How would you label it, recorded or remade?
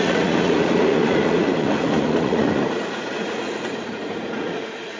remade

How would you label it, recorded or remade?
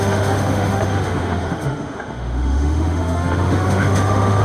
remade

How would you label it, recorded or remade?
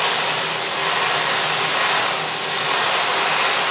recorded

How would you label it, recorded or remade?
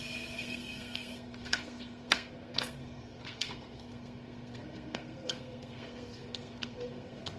remade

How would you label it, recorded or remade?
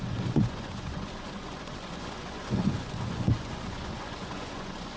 remade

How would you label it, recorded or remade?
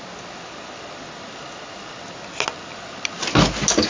recorded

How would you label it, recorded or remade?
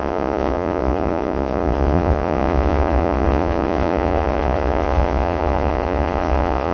remade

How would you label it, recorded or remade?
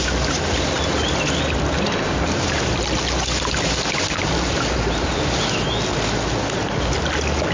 recorded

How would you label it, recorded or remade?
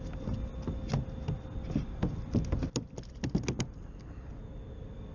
recorded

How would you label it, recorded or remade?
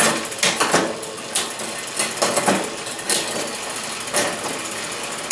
recorded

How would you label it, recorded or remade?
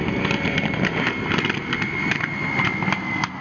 recorded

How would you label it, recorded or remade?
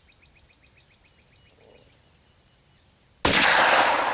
recorded